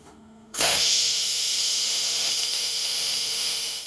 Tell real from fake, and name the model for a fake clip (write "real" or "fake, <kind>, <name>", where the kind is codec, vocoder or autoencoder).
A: fake, autoencoder, DAC-VAE